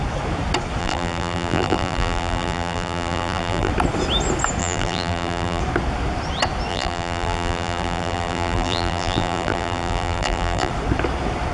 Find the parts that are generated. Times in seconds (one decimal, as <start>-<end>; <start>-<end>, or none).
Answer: 0.8-3.7; 4.6-5.6; 6.7-10.7